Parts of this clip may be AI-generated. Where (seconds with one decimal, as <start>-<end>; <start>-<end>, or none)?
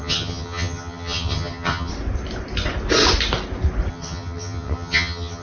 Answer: 0.0-1.9; 3.9-5.4